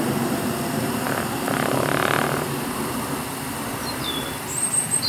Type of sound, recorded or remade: remade